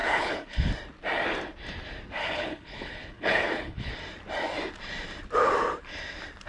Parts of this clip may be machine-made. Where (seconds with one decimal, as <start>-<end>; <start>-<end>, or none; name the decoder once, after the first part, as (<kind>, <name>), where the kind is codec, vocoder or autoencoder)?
0.0-0.7 (codec, HILCodec); 2.2-3.9